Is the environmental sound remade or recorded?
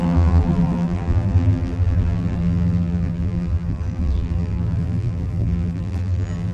remade